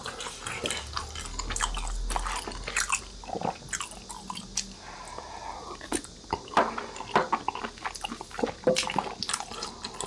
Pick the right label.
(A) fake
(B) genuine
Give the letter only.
B